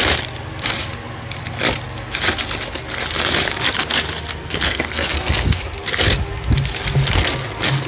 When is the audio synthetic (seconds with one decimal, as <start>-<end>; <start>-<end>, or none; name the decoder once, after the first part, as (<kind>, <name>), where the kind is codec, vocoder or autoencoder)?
4.4-5.6 (codec, SNAC)